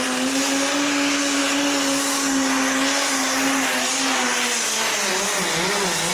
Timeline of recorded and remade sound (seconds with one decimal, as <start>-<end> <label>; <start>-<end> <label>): 0.0-6.1 recorded

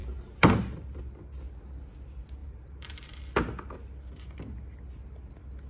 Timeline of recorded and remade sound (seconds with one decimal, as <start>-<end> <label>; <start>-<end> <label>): 0.0-1.0 remade; 1.0-2.4 recorded; 2.4-3.2 remade; 3.2-5.7 recorded

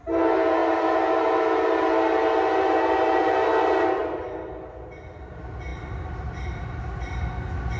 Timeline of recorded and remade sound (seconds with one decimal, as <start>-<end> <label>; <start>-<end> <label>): 0.0-7.8 recorded

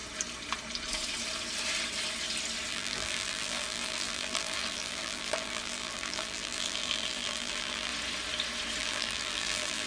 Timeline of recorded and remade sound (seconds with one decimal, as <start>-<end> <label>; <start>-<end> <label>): 0.0-2.7 recorded; 2.7-7.9 remade; 7.9-8.8 recorded; 8.8-9.9 remade

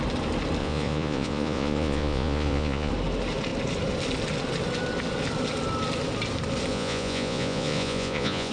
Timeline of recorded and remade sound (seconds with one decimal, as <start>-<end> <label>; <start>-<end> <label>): 0.0-0.6 recorded; 0.6-2.9 remade; 2.9-6.7 recorded; 6.7-8.5 remade

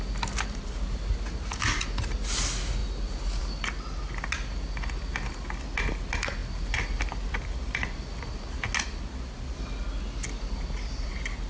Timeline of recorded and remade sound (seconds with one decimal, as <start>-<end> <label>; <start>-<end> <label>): 0.0-11.5 recorded